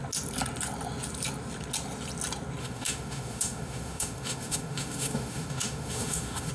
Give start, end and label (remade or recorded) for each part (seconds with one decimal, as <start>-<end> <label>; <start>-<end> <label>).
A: 0.0-2.6 recorded; 2.6-6.5 remade